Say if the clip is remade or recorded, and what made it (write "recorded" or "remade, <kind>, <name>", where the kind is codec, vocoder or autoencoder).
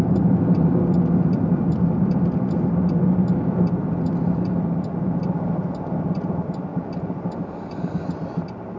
recorded